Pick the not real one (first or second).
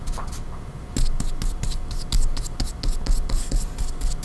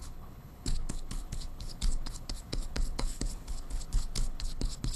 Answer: second